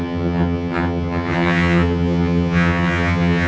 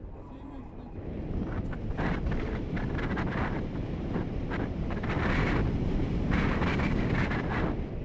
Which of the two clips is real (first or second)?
second